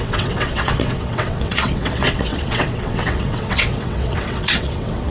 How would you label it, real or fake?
fake